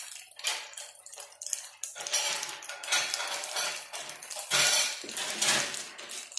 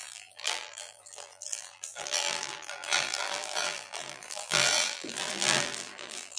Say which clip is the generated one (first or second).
second